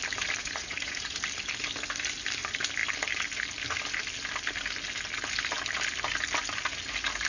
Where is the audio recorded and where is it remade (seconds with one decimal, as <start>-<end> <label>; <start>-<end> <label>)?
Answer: 0.0-0.4 recorded; 0.4-1.2 remade; 1.2-7.3 recorded